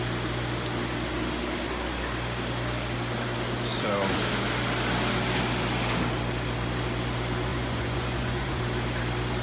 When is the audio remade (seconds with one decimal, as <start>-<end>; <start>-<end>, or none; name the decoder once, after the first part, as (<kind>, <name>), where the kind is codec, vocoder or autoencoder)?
7.5-8.6 (vocoder, Vocos)